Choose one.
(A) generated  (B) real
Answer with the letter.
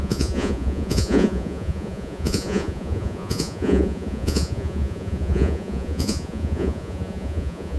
A